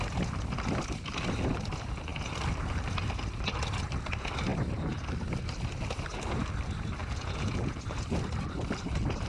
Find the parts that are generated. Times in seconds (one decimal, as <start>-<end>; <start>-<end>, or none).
7.0-7.8